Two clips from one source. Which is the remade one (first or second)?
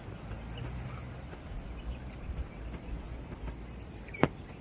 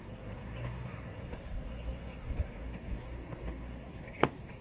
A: second